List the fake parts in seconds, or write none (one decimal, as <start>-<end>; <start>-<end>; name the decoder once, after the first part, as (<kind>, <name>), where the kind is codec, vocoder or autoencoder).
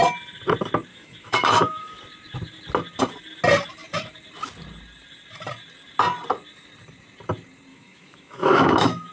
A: 0.9-2.0 (autoencoder, DAC-VAE); 7.7-9.1